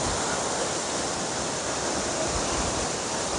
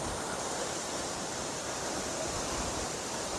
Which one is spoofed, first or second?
second